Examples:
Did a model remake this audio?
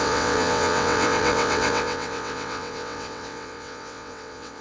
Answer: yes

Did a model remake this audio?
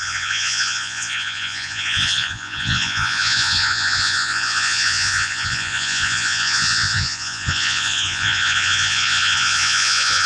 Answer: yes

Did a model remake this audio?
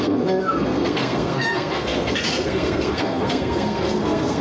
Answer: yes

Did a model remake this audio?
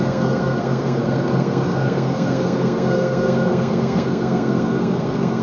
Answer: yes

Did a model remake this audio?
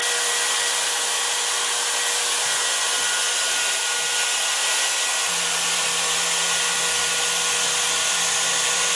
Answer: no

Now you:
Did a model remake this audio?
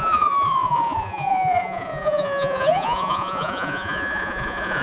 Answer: yes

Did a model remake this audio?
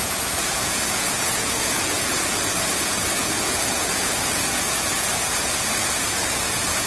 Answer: yes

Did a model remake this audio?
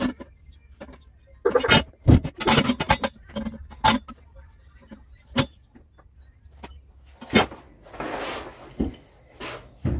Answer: no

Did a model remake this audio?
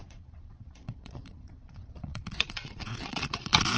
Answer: yes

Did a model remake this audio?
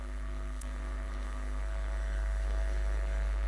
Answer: yes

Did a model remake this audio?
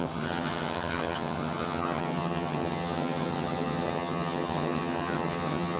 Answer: yes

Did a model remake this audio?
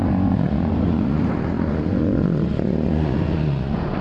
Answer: yes